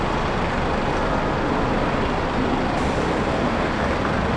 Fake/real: real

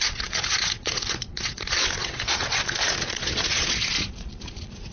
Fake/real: fake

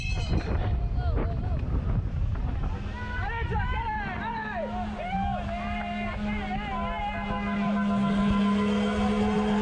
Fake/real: real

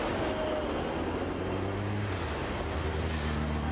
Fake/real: real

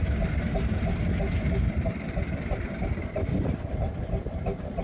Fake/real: real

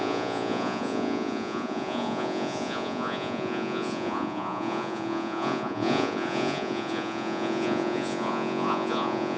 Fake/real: fake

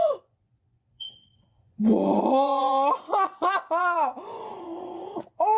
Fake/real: fake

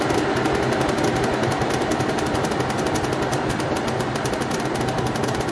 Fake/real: real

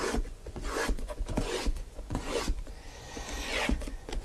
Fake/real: fake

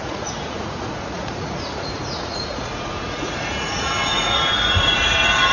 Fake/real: fake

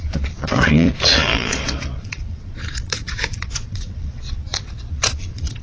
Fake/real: fake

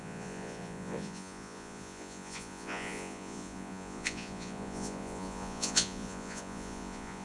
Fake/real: fake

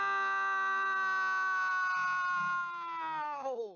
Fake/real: real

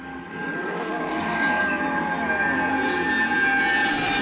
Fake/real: real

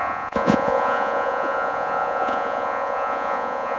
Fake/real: fake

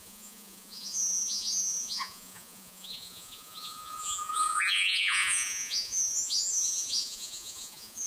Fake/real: fake